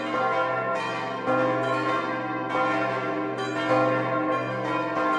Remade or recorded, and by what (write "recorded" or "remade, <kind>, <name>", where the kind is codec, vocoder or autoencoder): recorded